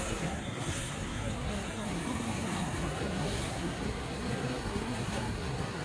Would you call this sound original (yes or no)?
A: no